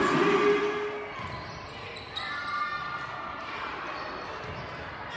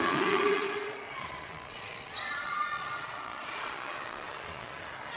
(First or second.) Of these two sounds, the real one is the first